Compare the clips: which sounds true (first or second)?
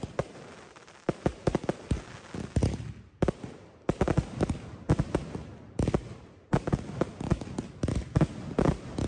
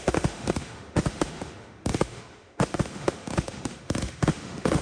first